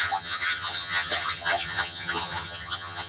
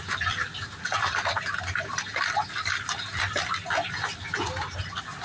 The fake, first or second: first